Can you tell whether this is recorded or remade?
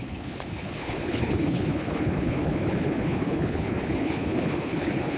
remade